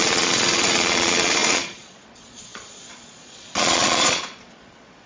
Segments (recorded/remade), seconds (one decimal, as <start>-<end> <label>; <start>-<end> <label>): 0.0-5.1 remade